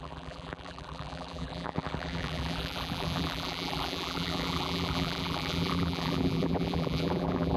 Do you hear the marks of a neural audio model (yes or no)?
yes